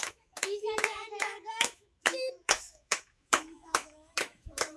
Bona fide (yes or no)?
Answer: no